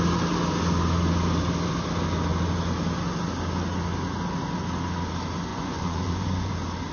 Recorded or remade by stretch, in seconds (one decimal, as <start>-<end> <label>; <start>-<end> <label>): 0.0-5.5 recorded; 5.5-6.5 remade; 6.5-6.9 recorded